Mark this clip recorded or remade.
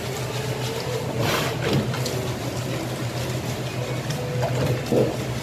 recorded